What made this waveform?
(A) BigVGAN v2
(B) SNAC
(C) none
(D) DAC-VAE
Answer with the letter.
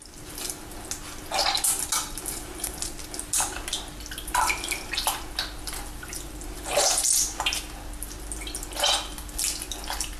C